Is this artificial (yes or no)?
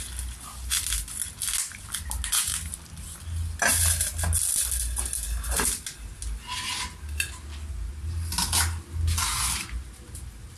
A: no